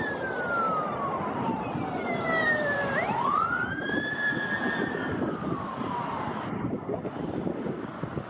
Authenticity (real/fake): fake